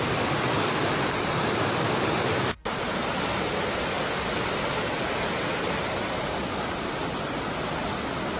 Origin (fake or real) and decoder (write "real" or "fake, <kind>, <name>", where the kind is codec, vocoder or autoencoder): real